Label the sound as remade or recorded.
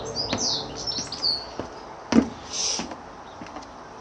recorded